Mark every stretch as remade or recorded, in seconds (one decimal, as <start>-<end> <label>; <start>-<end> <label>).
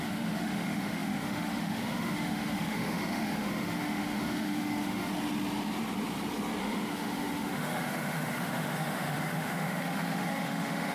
0.0-5.1 remade; 5.1-6.6 recorded; 6.6-10.9 remade